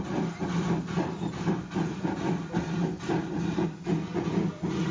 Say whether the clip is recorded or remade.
recorded